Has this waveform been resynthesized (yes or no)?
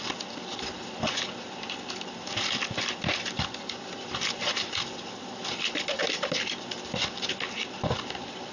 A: no